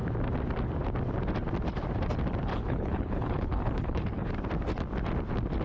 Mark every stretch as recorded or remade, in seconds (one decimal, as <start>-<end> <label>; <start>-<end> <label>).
0.0-2.5 recorded; 2.5-4.3 remade; 4.3-5.6 recorded

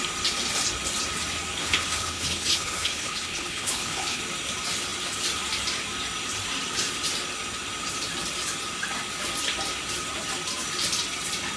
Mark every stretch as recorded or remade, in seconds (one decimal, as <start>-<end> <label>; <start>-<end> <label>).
0.0-1.6 recorded; 1.6-4.2 remade; 4.2-11.6 recorded